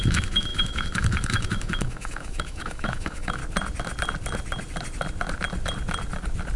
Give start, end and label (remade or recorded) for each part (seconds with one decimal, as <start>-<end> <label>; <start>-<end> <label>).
0.0-3.4 remade; 3.4-6.6 recorded